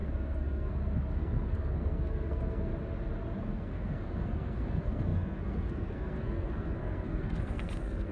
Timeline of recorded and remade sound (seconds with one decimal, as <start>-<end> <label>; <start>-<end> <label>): 0.0-2.7 remade; 2.7-3.4 recorded; 3.4-8.1 remade